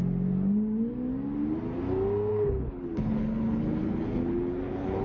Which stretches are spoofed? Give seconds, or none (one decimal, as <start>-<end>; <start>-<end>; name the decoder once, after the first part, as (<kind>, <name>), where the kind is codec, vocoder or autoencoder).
2.3-5.0 (codec, HILCodec)